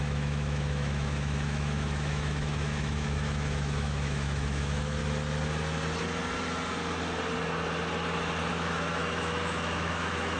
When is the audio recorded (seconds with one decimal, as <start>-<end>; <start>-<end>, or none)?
5.0-8.5